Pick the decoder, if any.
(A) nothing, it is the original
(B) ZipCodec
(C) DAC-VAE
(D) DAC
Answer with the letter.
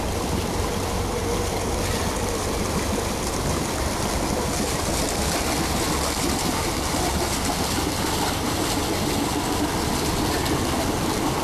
A